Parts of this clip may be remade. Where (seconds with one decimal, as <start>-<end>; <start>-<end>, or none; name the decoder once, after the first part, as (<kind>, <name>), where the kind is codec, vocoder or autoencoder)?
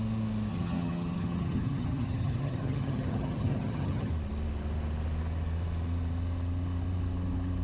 0.5-4.1 (vocoder, HiFi-GAN)